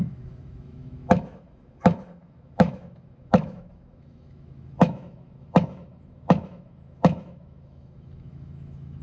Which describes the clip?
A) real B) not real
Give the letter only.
B